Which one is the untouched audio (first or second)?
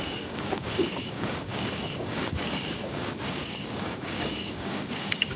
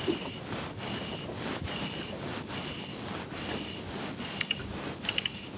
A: second